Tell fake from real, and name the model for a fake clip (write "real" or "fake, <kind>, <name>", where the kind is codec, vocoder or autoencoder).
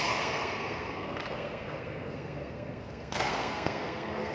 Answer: fake, codec, SNAC